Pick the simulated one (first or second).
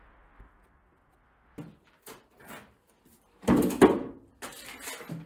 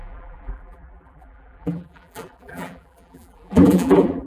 second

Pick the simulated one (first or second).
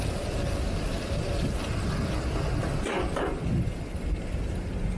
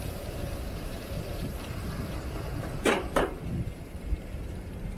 second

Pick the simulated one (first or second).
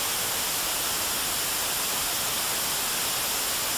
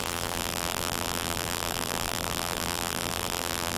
second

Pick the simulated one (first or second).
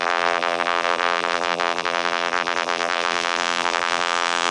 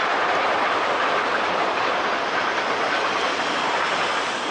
first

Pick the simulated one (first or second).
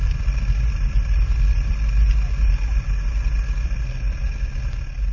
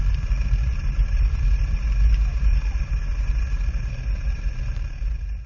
second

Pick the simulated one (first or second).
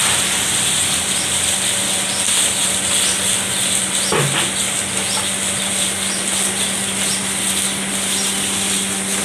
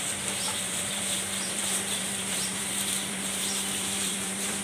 second